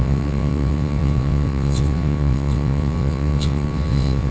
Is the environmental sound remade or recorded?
remade